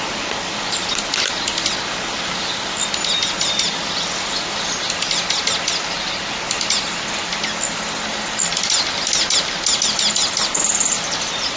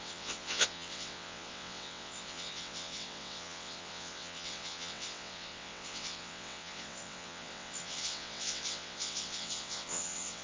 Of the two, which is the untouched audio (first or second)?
first